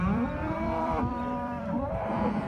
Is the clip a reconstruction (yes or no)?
yes